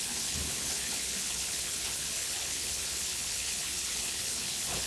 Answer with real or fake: fake